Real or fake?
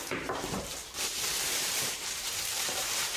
fake